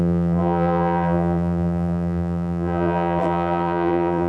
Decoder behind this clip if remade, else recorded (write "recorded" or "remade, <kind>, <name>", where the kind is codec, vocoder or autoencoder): remade, vocoder, BigVGAN v2